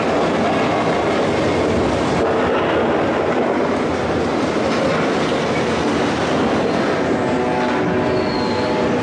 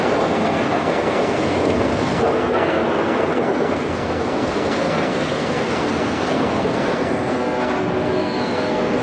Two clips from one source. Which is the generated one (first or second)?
second